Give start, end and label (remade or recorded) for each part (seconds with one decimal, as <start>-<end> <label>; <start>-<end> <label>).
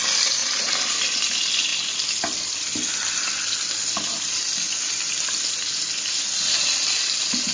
0.0-0.4 recorded; 0.4-1.0 remade; 1.0-7.5 recorded